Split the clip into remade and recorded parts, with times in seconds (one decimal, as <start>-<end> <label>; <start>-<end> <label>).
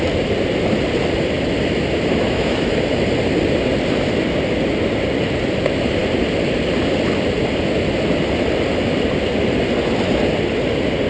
0.0-2.1 recorded; 2.1-2.7 remade; 2.7-11.1 recorded